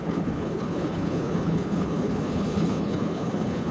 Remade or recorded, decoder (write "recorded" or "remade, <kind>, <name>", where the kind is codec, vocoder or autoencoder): remade, codec, HILCodec